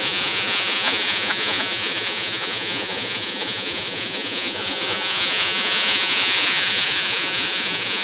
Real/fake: fake